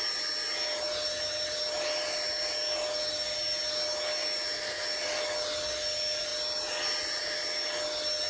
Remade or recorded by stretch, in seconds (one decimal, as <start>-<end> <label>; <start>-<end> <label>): 0.0-8.3 recorded